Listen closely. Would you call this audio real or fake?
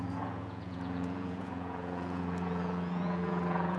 fake